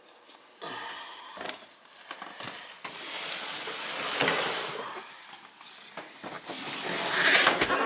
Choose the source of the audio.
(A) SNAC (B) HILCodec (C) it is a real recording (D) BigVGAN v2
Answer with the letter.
C